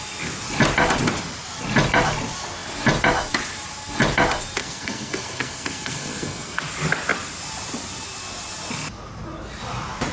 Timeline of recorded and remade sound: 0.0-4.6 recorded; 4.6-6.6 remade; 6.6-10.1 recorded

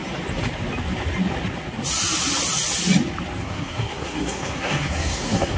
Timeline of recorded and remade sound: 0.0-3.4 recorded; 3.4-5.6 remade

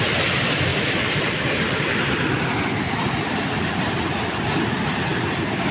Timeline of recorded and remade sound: 0.0-0.7 recorded; 0.7-3.9 remade; 3.9-5.7 recorded

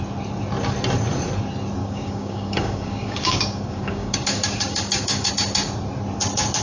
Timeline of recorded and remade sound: 0.0-1.8 recorded; 1.8-5.3 remade; 5.3-6.6 recorded